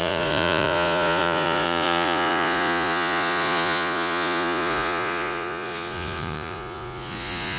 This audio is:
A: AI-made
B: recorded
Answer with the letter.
A